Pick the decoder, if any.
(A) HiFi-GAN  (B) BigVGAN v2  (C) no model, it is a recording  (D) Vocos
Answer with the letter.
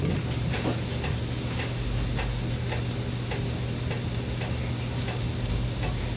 C